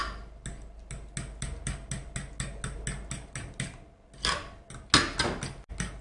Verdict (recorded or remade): recorded